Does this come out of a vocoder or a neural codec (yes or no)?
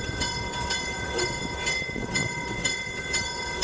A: yes